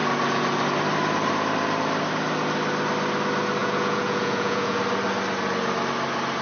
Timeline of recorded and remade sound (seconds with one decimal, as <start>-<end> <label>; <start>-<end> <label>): 0.0-3.6 recorded; 3.6-4.8 remade; 4.8-6.4 recorded